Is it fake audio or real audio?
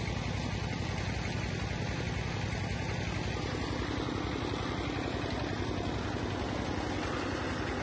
real